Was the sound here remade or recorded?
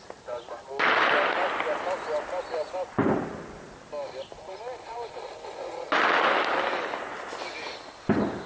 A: recorded